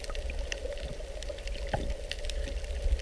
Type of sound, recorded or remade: recorded